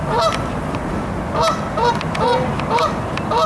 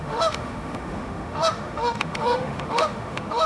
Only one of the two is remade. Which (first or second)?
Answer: second